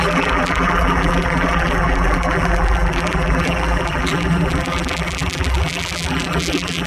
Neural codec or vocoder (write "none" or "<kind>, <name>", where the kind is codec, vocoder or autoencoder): vocoder, BigVGAN v2